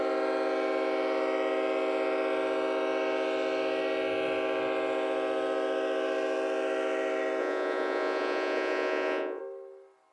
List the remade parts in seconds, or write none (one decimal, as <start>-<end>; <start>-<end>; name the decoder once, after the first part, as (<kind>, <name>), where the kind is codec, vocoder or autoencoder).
7.4-9.4 (vocoder, Vocos)